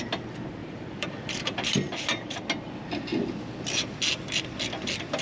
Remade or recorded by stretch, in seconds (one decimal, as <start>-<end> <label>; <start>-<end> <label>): 0.0-0.6 recorded; 0.6-2.4 remade; 2.4-5.2 recorded